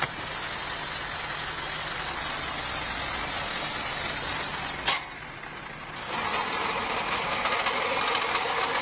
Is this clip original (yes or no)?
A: yes